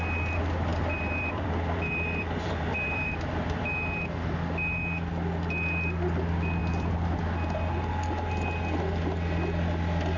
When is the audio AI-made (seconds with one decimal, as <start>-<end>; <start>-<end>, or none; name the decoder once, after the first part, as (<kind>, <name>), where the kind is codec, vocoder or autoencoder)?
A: 0.7-3.6 (vocoder, BigVGAN v2); 6.6-7.2